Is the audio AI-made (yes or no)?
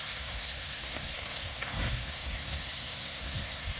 yes